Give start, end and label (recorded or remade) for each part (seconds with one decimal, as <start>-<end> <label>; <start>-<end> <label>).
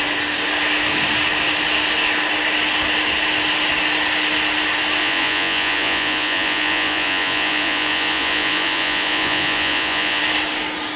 0.0-5.0 recorded; 5.0-10.2 remade; 10.2-11.0 recorded